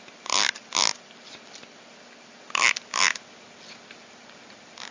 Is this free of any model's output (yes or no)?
yes